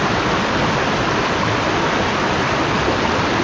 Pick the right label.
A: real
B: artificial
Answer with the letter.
A